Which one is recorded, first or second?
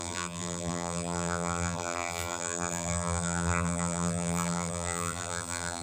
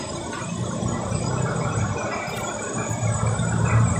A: second